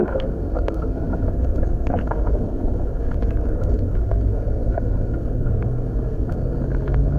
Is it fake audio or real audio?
fake